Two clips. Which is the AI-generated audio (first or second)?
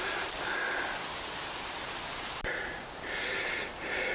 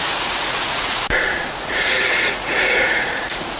second